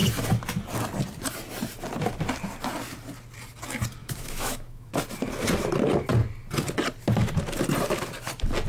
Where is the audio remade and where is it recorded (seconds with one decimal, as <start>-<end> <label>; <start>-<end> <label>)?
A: 0.0-4.0 recorded; 4.0-4.9 remade; 4.9-8.7 recorded